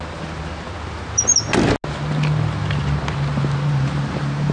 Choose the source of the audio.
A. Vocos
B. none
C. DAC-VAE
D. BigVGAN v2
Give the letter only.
B